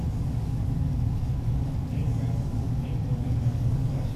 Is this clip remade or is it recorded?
remade